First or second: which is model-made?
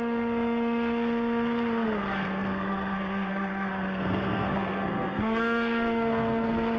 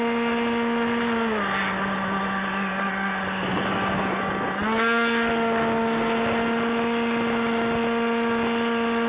first